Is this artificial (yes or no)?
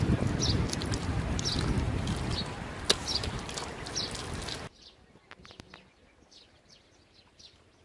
no